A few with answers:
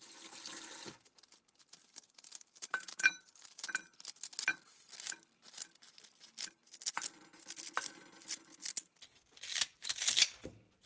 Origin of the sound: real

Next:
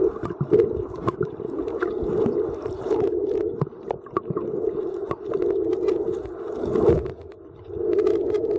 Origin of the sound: real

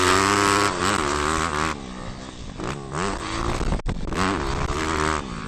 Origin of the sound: real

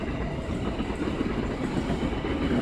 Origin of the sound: real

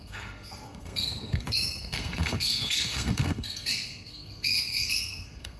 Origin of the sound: fake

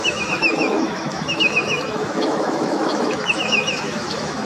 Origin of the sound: fake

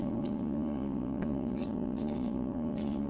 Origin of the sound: fake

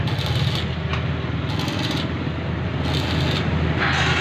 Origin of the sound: real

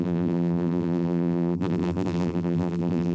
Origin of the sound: fake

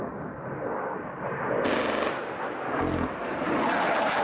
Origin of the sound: real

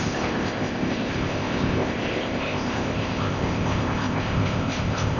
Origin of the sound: fake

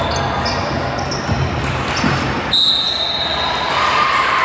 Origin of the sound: real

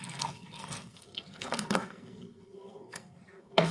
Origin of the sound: fake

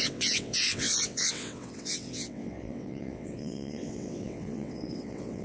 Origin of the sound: fake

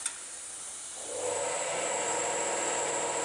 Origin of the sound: real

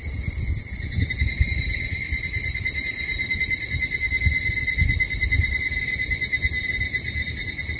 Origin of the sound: real